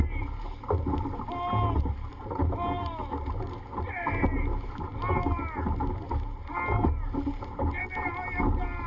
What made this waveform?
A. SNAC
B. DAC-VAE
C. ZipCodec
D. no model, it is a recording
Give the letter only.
D